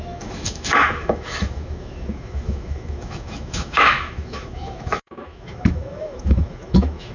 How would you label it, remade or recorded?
remade